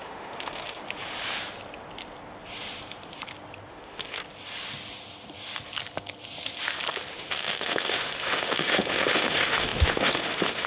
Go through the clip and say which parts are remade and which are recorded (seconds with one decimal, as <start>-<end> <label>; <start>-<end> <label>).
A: 0.0-0.8 remade; 0.8-3.7 recorded; 3.7-4.2 remade; 4.2-7.1 recorded; 7.1-10.7 remade